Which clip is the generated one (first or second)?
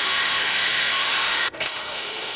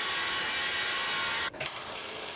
first